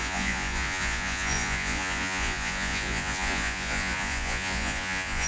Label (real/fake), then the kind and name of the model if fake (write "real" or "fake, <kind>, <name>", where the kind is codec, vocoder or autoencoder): fake, vocoder, Vocos